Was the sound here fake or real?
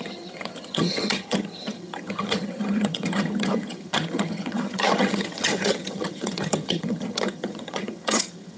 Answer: fake